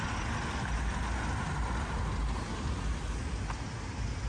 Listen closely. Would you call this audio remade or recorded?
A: recorded